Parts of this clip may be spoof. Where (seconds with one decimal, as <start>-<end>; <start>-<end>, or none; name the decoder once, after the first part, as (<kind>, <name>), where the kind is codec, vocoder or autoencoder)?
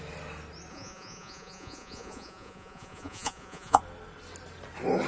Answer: 0.7-3.8 (vocoder, Vocos)